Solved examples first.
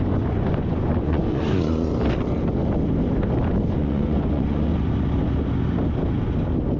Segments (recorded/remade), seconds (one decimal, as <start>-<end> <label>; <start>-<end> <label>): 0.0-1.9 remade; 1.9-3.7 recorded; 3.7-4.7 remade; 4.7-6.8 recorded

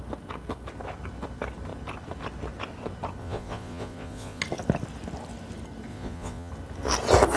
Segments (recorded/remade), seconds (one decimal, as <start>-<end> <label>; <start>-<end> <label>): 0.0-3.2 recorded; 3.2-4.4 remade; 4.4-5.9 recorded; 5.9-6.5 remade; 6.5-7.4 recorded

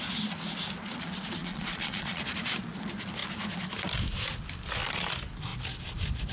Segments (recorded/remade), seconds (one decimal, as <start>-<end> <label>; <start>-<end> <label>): 0.0-1.4 recorded; 1.4-2.2 remade; 2.2-6.3 recorded

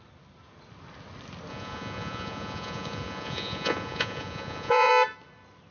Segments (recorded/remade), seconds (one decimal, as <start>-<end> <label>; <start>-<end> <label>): 0.0-1.5 recorded; 1.5-4.9 remade; 4.9-5.7 recorded